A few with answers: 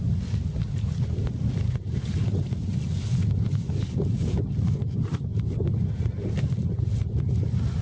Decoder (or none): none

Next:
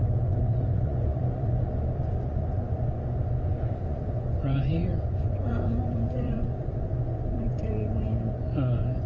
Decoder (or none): vocoder, Vocos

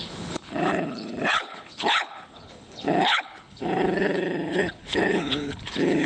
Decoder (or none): codec, HILCodec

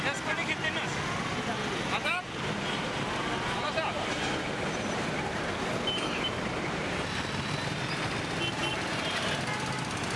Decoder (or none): none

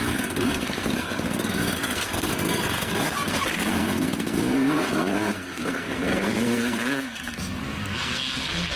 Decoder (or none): codec, SNAC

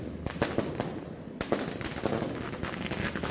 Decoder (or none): none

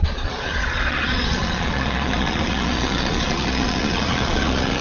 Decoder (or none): vocoder, Vocos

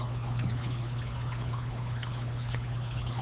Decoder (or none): codec, HILCodec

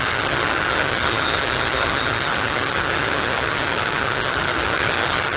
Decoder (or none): vocoder, HiFi-GAN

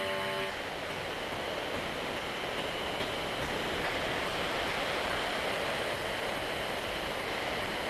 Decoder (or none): none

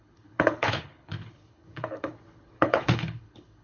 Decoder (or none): codec, HILCodec